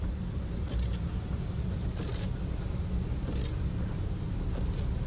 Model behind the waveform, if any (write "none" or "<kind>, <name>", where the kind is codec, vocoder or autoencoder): none